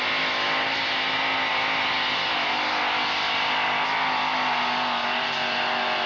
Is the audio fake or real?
real